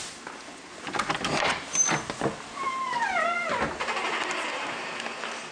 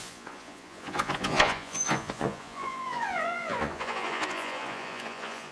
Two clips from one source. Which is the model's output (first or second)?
second